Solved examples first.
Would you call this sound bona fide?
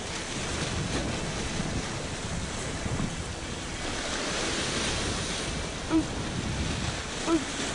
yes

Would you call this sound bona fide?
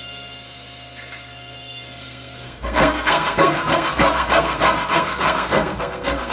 no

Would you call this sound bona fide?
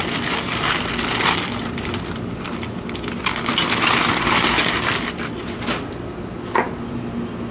yes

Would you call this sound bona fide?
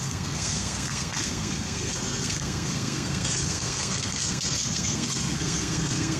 no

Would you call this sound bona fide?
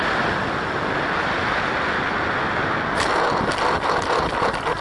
yes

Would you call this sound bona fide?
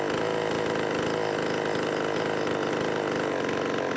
yes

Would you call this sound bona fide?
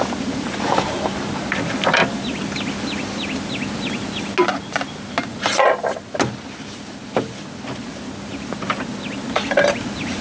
yes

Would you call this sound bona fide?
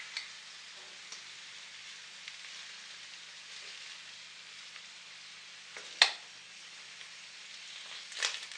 yes